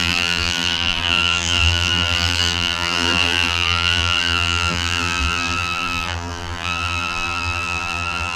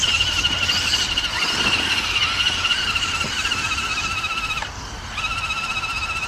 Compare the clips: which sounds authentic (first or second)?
second